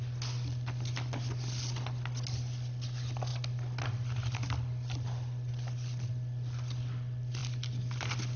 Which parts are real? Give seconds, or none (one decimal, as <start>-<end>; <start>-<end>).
0.0-8.4